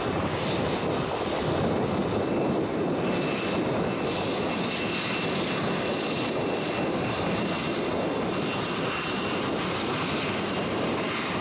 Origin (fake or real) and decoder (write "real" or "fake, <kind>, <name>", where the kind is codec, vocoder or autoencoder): real